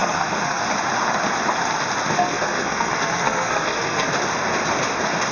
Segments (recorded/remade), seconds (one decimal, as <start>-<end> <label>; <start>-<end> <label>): 0.0-0.6 remade; 0.6-2.1 recorded; 2.1-4.1 remade; 4.1-5.3 recorded